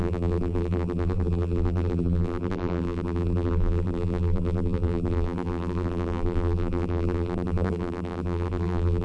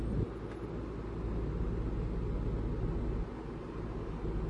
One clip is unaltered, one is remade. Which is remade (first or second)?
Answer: first